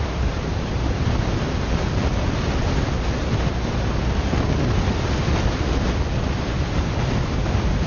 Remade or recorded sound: recorded